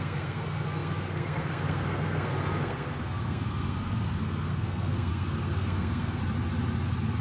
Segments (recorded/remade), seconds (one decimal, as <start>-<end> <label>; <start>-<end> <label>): 0.0-6.2 remade; 6.2-7.2 recorded